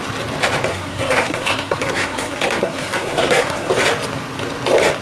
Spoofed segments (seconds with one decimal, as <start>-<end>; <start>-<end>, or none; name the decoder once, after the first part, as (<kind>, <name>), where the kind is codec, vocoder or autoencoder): 0.7-3.7 (codec, SNAC)